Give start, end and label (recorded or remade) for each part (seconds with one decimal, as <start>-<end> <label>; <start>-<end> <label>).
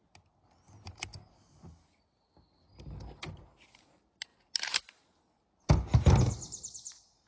0.0-7.3 recorded